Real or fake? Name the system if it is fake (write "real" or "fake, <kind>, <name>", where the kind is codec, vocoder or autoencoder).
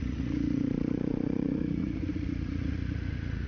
fake, vocoder, Vocos